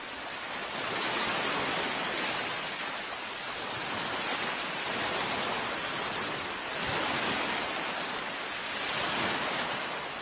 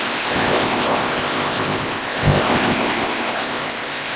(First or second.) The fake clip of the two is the second